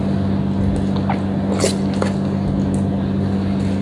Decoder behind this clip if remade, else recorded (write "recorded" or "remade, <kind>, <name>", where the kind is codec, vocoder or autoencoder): recorded